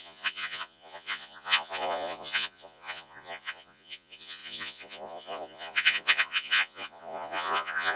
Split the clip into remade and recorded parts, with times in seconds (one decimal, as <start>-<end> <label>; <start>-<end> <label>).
0.0-8.0 remade